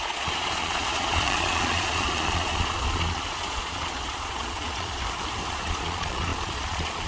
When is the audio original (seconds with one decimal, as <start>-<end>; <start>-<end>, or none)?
5.0-5.5